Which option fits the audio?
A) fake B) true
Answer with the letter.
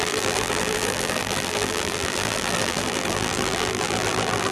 A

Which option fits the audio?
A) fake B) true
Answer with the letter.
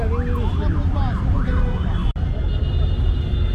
B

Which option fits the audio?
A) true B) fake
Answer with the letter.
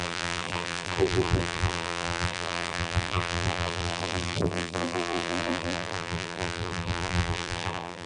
B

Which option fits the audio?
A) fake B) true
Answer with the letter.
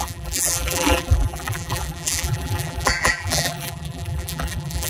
A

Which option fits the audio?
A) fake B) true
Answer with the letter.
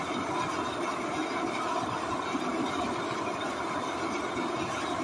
B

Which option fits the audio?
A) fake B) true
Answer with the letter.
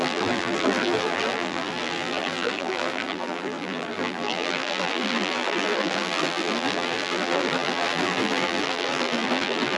A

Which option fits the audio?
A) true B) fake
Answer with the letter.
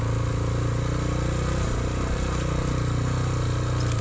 A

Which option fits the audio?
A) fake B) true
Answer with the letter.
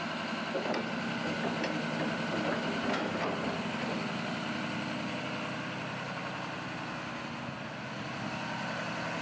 B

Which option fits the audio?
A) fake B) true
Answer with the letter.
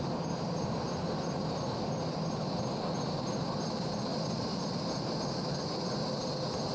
B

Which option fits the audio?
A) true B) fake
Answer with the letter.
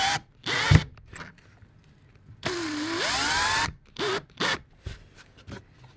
B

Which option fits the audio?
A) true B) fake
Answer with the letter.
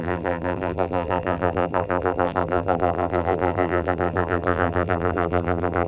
B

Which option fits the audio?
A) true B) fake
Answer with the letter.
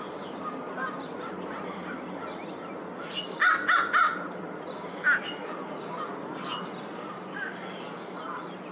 A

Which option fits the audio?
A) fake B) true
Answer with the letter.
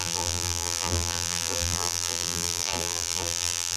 A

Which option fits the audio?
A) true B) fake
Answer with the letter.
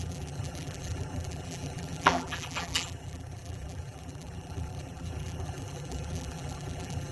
B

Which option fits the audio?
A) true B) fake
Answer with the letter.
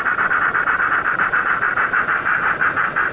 B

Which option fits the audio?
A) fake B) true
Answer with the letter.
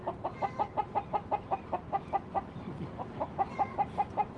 B